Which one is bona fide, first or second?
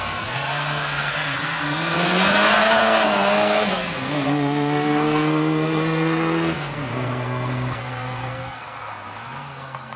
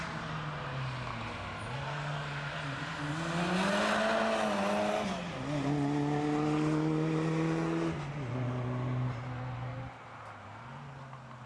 second